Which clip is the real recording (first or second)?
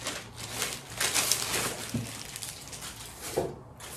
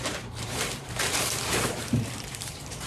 first